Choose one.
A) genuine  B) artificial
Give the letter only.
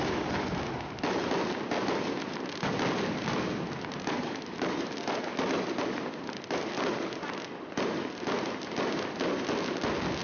A